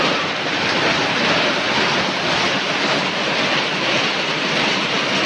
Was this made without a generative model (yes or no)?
yes